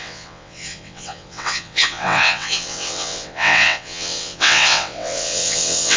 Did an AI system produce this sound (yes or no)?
yes